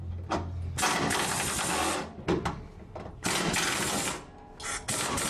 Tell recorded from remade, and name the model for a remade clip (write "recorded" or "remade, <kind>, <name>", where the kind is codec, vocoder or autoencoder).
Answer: recorded